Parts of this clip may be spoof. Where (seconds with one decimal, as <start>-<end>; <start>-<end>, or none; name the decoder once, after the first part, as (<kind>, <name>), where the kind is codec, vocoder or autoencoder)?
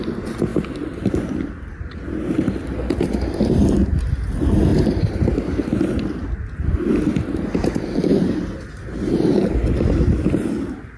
4.7-5.5 (vocoder, BigVGAN v2); 7.1-9.5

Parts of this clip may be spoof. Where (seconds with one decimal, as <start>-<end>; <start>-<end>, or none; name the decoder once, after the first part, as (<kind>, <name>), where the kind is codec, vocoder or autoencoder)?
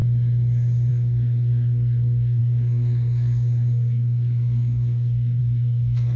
0.9-6.2 (codec, SNAC)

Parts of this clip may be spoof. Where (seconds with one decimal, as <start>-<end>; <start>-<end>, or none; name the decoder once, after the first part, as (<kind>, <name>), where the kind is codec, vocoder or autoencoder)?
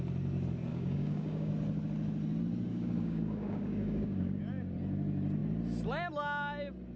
0.7-1.5 (codec, DAC); 2.7-4.4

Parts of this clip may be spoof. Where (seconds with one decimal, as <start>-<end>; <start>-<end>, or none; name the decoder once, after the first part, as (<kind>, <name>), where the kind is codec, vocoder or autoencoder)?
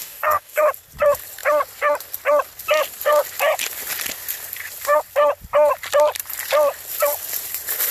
0.0-0.6 (codec, DAC)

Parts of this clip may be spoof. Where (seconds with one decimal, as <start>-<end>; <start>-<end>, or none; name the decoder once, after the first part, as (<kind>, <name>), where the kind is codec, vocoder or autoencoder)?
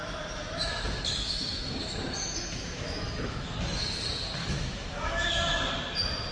0.0-3.5 (autoencoder, DAC-VAE); 4.4-5.6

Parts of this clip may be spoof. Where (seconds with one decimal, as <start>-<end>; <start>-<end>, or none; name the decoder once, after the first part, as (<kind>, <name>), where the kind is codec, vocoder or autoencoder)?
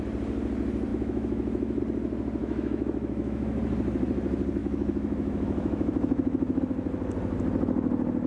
0.9-1.8 (autoencoder, DAC-VAE); 2.4-3.6; 4.6-6.6